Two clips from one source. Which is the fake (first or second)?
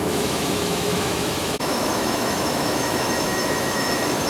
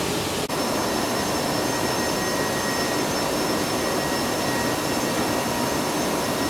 first